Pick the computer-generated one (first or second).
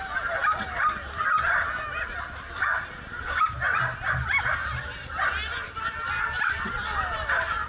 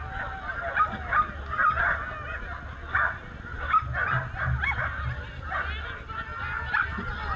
first